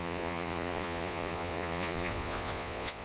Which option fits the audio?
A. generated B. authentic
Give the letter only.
A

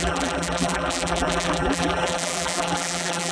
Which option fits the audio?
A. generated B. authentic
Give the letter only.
A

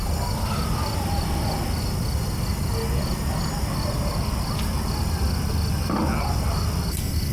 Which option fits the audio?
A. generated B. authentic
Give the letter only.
B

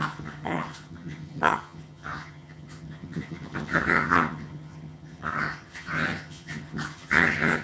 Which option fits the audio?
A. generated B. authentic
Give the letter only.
A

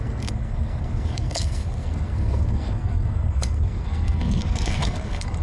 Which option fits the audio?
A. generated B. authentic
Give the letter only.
A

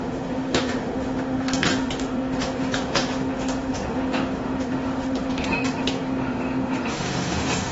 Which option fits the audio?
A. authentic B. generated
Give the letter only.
B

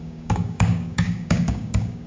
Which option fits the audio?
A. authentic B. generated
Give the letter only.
B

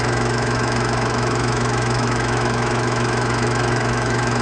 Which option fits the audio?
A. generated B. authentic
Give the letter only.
A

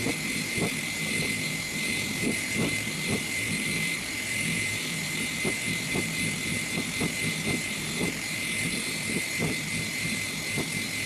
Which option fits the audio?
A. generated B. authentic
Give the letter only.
A